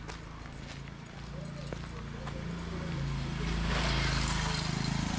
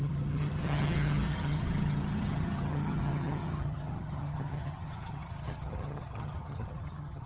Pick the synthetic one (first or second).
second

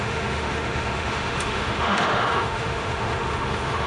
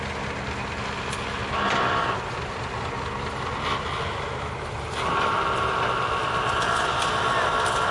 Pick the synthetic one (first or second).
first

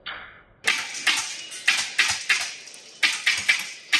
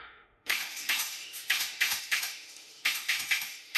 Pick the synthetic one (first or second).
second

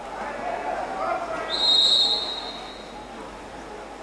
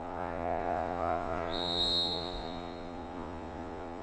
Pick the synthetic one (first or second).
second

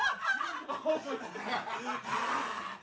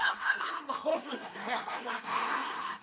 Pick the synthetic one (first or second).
second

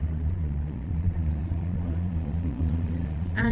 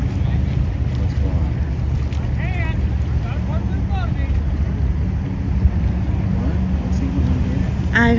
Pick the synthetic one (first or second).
first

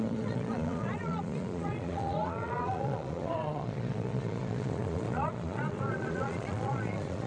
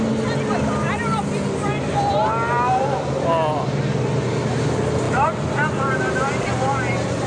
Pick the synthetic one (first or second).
first